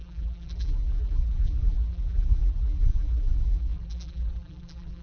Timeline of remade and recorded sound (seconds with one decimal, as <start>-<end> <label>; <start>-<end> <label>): 0.0-5.0 remade